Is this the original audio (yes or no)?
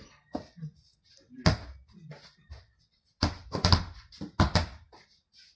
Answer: yes